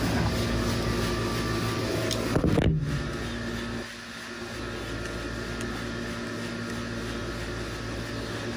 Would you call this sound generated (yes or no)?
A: no